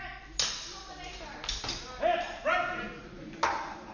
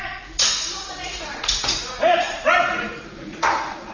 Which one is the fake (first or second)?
second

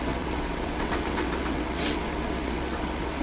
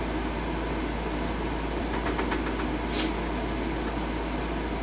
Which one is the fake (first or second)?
first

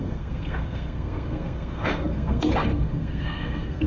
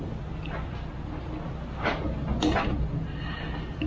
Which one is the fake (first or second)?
first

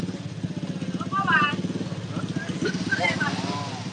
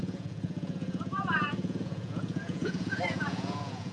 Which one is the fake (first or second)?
second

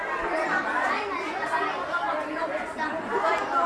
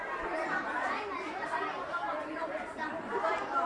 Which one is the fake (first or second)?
second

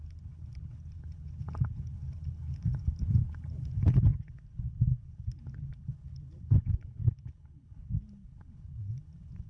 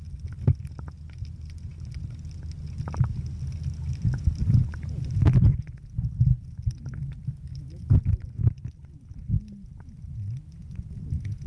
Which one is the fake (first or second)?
first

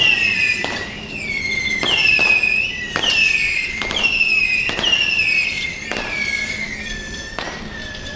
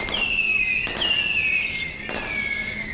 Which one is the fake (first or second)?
first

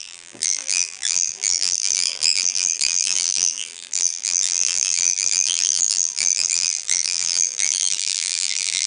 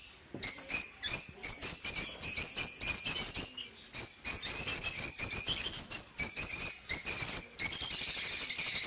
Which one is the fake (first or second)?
first